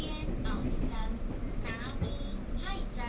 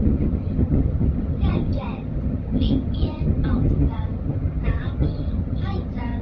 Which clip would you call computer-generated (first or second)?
second